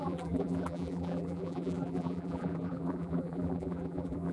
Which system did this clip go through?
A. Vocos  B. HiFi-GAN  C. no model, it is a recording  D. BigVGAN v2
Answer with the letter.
D